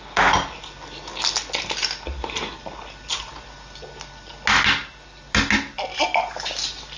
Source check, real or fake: real